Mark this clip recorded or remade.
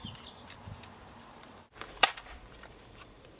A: remade